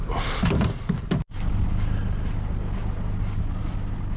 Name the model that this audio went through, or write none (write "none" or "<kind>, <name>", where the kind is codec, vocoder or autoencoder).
none